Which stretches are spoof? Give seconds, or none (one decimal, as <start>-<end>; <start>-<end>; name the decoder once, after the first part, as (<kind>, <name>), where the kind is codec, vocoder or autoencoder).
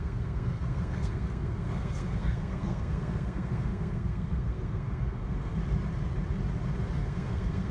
0.0-5.6 (codec, SNAC); 7.0-7.7